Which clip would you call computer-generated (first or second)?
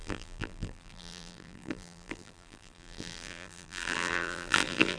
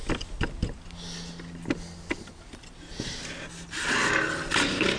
first